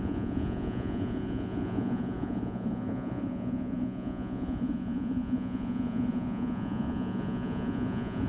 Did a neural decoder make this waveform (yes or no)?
yes